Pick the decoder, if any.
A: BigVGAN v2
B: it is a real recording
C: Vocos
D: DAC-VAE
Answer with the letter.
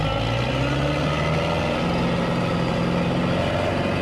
B